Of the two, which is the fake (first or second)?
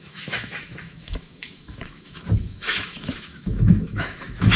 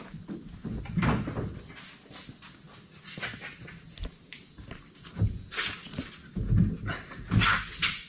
first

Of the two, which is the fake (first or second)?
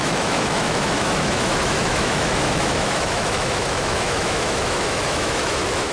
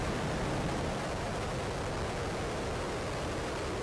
first